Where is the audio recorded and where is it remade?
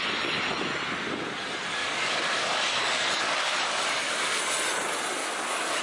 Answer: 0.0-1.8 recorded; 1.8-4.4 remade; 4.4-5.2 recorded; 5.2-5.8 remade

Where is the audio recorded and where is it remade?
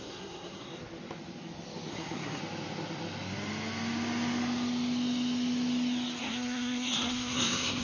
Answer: 0.0-0.7 remade; 0.7-1.9 recorded; 1.9-2.4 remade; 2.4-6.2 recorded; 6.2-7.8 remade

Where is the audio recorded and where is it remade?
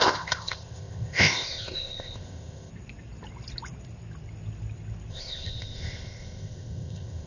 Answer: 0.0-2.7 remade; 2.7-5.1 recorded; 5.1-7.3 remade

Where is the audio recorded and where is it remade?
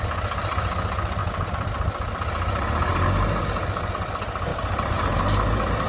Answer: 0.0-5.9 recorded